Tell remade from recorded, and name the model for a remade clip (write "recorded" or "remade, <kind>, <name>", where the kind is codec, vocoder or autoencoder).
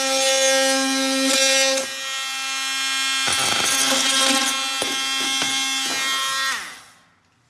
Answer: recorded